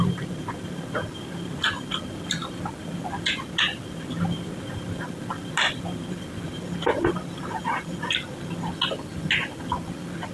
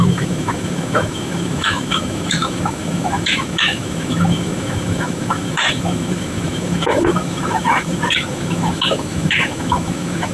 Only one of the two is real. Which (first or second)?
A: first